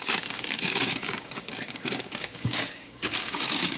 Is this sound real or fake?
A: fake